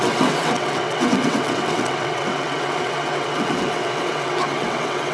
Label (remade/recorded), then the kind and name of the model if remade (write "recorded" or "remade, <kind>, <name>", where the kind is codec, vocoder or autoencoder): remade, vocoder, WaveNeXt